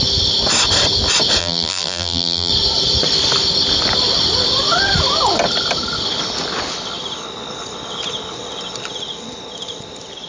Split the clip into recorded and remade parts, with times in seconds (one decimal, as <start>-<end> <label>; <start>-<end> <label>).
0.0-1.4 recorded; 1.4-2.5 remade; 2.5-10.3 recorded